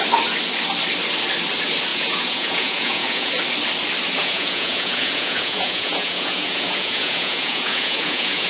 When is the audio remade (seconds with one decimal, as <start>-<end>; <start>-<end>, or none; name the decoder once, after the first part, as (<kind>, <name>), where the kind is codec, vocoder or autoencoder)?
1.9-3.3 (vocoder, Vocos); 4.2-8.5